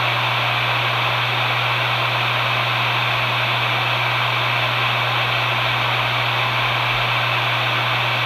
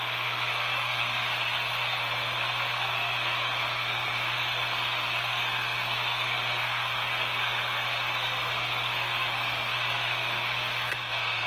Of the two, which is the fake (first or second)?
second